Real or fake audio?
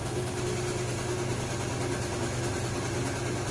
real